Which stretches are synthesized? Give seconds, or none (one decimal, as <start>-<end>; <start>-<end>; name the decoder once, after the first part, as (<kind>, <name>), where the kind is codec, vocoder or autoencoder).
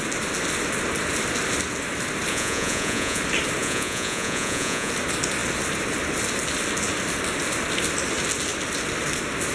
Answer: 2.3-3.2 (vocoder, Vocos); 3.6-4.9